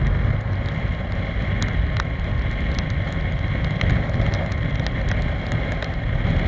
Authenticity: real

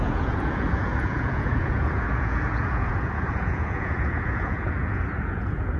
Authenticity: fake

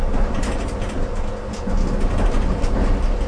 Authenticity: real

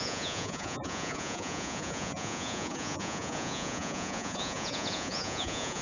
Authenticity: fake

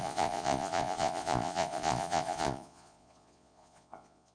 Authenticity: fake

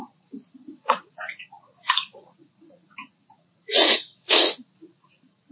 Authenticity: fake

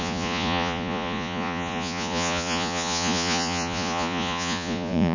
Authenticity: fake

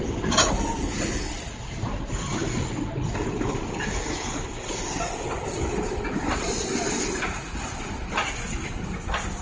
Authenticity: real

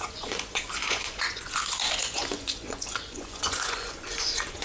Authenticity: fake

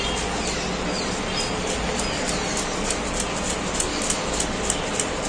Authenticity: real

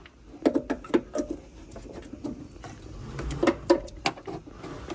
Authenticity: real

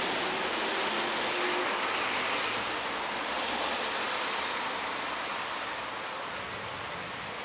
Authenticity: real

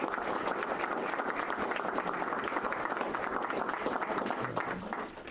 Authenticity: real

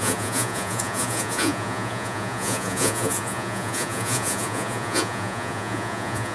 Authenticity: fake